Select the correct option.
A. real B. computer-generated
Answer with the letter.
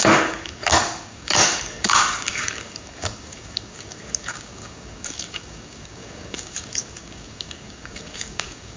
B